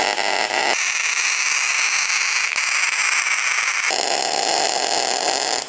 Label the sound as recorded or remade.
recorded